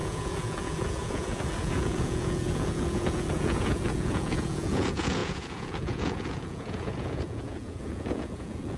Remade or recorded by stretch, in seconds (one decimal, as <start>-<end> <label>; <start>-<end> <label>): 0.0-8.8 remade